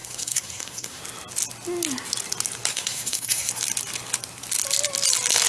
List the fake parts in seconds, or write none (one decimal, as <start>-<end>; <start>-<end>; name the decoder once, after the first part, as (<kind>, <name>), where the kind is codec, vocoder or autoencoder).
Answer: 0.0-1.0 (codec, SNAC); 2.7-3.5